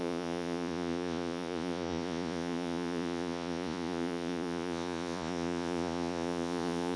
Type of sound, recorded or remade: remade